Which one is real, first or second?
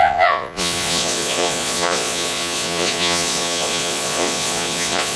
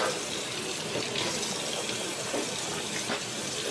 second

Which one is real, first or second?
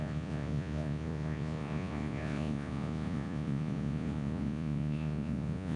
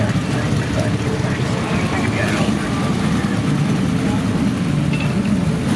second